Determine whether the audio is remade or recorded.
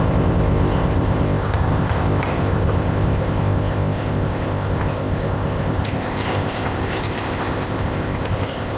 remade